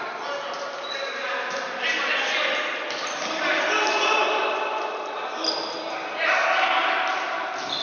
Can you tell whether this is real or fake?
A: real